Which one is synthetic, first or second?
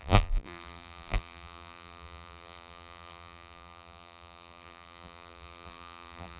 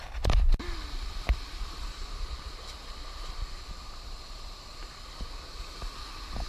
first